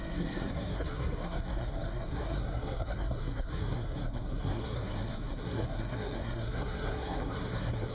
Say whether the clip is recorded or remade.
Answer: remade